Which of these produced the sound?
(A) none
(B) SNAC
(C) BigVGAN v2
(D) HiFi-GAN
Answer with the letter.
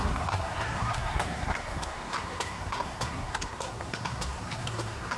B